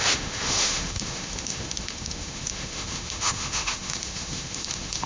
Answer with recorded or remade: remade